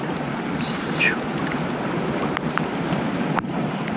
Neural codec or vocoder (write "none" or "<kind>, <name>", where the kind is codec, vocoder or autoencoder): vocoder, BigVGAN v2